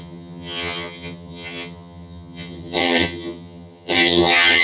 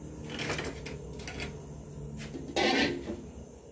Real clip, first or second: second